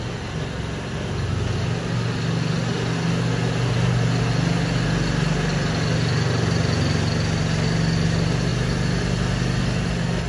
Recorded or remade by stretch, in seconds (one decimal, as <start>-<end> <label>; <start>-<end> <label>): 0.0-10.3 recorded